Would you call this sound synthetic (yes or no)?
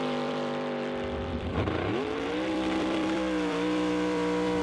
yes